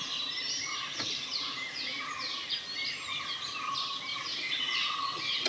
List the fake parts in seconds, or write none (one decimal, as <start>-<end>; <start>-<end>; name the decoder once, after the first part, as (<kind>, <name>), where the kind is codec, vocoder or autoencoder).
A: 4.1-5.5 (vocoder, WaveNeXt)